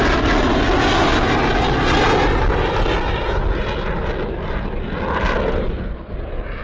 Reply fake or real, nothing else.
real